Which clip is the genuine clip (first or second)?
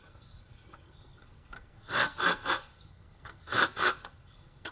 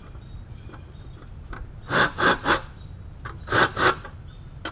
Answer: second